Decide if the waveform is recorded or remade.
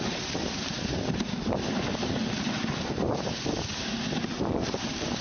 recorded